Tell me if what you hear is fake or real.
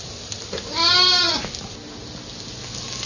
real